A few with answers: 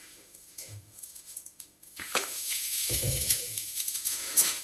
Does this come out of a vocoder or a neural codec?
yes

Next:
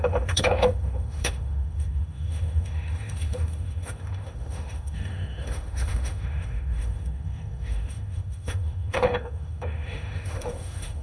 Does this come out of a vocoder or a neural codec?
yes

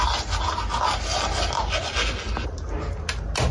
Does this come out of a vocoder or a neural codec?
no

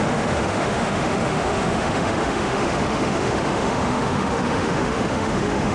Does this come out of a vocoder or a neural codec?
yes